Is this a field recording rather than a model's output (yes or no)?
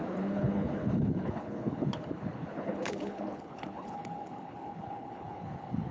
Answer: no